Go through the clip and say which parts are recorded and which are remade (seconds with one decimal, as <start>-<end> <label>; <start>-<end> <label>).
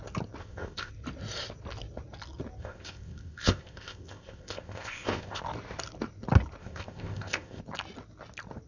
0.0-0.4 recorded; 0.4-0.9 remade; 0.9-2.6 recorded; 2.6-5.4 remade; 5.4-6.6 recorded; 6.6-7.6 remade; 7.6-8.7 recorded